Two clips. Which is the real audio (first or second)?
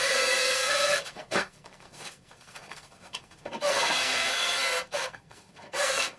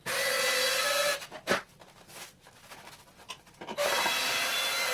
second